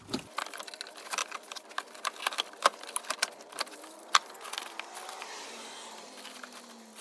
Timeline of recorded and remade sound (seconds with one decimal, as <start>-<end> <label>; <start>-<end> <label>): 0.0-7.0 recorded